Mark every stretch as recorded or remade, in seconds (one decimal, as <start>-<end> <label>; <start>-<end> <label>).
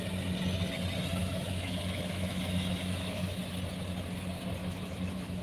0.0-1.2 recorded; 1.2-3.4 remade; 3.4-4.6 recorded; 4.6-5.4 remade